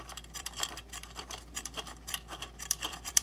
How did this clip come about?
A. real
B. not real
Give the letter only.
B